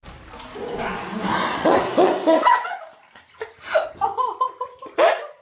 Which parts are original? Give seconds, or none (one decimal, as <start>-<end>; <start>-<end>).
0.0-1.5; 2.8-5.4